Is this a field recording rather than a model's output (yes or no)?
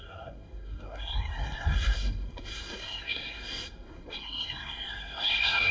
no